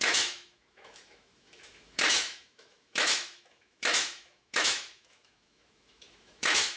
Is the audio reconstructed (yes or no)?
yes